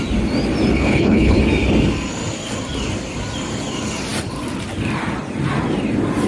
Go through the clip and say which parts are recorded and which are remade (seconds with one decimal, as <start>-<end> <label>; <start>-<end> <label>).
0.0-0.8 recorded; 0.8-1.4 remade; 1.4-6.3 recorded